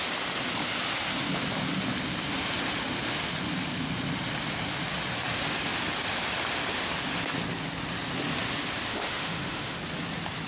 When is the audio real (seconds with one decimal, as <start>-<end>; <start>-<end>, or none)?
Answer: 0.0-8.9; 9.8-10.5